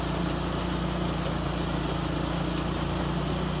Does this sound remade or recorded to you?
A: recorded